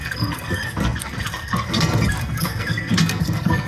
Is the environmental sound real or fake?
fake